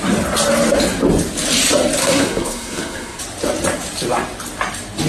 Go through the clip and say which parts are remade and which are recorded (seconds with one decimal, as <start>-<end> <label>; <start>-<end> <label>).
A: 0.0-2.0 recorded; 2.0-3.2 remade; 3.2-5.1 recorded

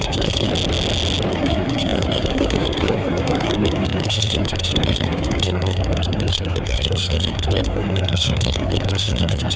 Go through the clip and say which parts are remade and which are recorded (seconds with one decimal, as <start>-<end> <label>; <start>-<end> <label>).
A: 0.0-0.5 remade; 0.5-1.3 recorded; 1.3-9.6 remade

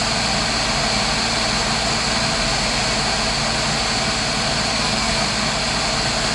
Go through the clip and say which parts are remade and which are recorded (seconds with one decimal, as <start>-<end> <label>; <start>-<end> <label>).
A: 0.0-4.7 recorded; 4.7-5.2 remade; 5.2-6.3 recorded